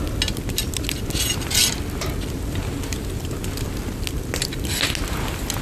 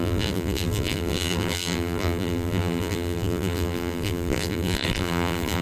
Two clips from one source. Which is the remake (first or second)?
second